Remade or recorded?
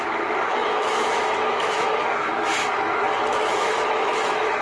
remade